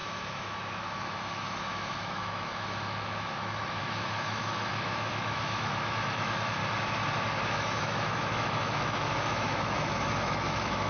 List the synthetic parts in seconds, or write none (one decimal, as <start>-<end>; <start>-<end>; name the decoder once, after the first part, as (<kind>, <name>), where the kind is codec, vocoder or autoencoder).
0.0-6.6 (autoencoder, DAC-VAE); 7.5-10.9